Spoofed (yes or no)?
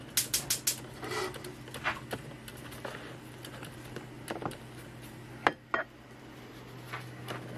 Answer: no